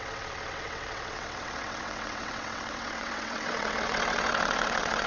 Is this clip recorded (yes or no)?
no